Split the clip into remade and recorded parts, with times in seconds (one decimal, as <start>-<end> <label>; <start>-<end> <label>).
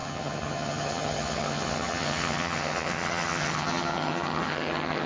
0.0-5.1 remade